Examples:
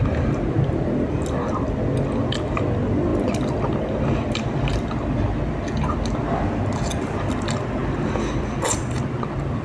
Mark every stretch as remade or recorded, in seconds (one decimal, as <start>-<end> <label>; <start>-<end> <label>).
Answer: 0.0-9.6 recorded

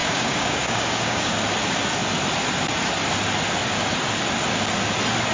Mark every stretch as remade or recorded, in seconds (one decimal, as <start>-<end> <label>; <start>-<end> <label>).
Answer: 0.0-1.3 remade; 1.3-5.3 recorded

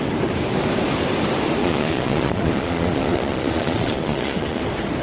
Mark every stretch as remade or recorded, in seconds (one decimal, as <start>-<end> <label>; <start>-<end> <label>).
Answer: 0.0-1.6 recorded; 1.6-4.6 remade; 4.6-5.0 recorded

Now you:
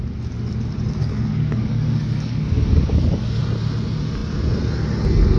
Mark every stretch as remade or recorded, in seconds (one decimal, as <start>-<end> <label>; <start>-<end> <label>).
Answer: 0.0-1.3 recorded; 1.3-3.4 remade; 3.4-5.4 recorded

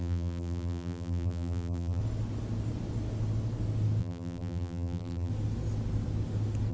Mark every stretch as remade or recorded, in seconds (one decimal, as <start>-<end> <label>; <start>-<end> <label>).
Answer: 0.0-2.0 remade; 2.0-4.0 recorded; 4.0-5.3 remade; 5.3-6.7 recorded

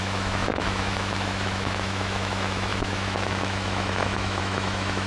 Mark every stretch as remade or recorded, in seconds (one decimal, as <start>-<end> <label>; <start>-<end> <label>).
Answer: 0.0-5.1 remade

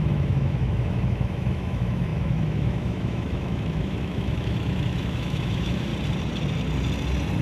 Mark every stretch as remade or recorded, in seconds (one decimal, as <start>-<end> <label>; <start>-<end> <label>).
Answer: 0.0-5.9 remade; 5.9-7.4 recorded

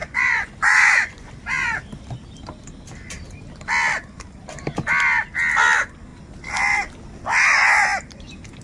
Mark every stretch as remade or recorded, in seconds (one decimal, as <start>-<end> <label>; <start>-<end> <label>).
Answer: 0.0-1.3 remade; 1.3-8.6 recorded